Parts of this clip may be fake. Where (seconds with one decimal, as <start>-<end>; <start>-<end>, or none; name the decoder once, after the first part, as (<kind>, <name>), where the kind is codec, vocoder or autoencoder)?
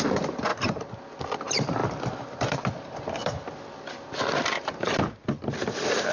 0.0-0.5 (vocoder, BigVGAN v2); 1.2-6.1